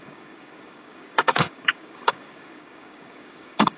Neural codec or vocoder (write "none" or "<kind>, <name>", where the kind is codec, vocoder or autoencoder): codec, DAC